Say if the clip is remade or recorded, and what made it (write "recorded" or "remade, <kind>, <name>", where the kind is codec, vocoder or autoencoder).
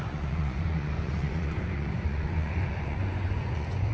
remade, vocoder, Vocos